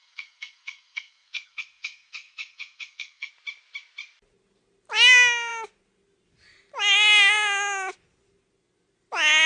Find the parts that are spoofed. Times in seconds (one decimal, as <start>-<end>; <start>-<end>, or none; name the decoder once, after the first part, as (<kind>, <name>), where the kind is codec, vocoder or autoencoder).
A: 0.0-3.3 (codec, SNAC)